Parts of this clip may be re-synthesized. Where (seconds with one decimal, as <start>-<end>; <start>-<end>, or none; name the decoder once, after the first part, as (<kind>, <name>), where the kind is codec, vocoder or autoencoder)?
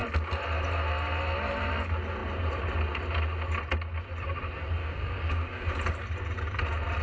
4.8-5.7 (codec, DAC)